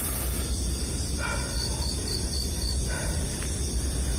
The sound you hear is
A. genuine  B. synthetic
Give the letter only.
A